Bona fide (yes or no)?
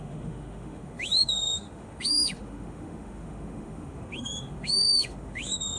no